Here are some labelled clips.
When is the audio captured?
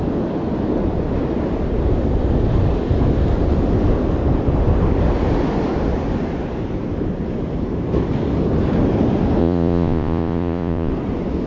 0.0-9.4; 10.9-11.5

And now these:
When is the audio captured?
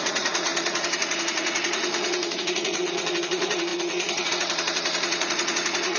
none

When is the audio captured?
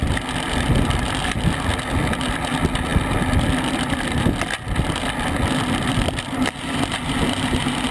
0.0-7.9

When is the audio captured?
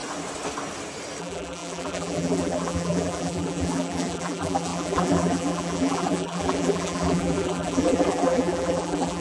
0.0-1.2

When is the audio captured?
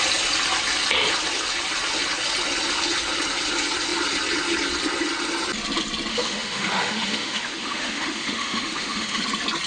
0.0-6.1; 9.2-9.7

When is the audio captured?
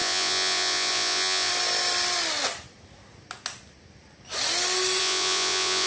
1.5-5.0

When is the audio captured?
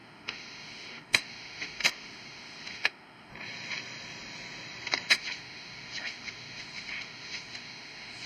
3.3-5.1